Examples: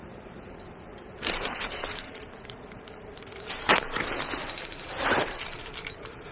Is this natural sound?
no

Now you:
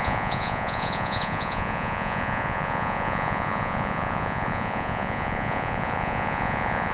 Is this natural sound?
no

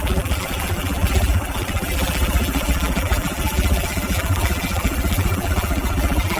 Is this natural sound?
no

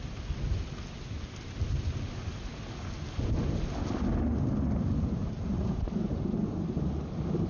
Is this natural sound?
yes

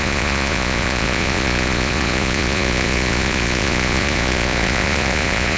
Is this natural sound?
no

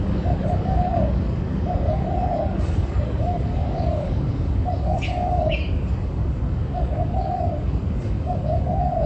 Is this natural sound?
no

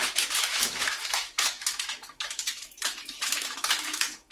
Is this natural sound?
no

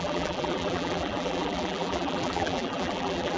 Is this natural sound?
no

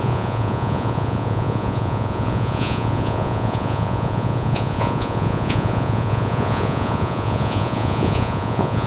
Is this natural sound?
no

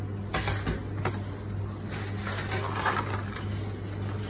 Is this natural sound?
yes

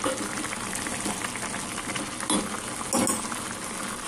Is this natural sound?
yes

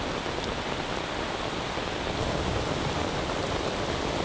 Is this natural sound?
yes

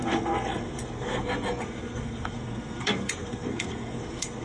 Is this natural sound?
no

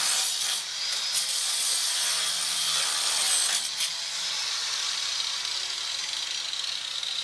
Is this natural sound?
yes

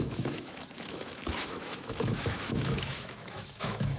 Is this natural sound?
no